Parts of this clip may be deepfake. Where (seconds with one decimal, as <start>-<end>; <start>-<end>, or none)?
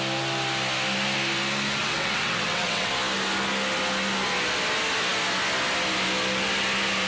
1.8-2.9